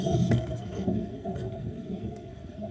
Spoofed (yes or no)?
yes